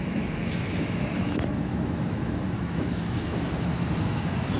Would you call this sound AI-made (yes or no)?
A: yes